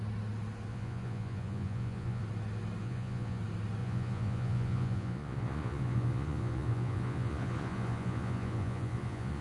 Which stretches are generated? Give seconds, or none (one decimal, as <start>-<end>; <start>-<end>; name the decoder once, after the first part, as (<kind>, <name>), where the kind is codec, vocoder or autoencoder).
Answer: 0.7-2.2 (vocoder, Vocos); 2.8-3.4; 3.8-9.4